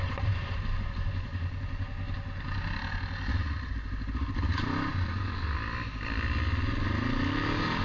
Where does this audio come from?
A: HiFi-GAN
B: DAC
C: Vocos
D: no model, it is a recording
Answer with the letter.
D